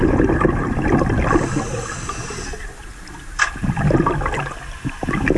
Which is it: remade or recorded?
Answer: recorded